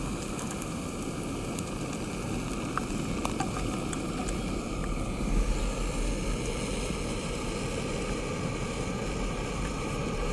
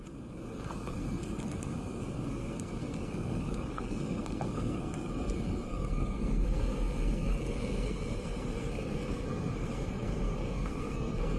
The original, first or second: first